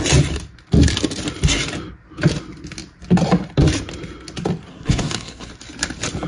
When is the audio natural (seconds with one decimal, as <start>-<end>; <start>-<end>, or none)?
0.0-4.7; 5.5-6.3